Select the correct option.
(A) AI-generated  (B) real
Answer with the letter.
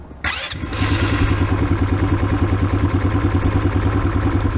B